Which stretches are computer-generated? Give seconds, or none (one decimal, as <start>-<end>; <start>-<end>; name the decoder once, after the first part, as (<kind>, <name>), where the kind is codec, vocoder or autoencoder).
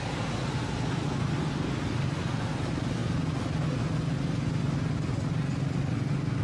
none